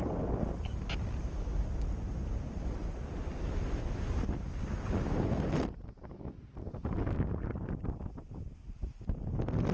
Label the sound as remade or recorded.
recorded